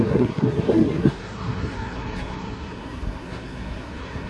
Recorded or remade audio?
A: remade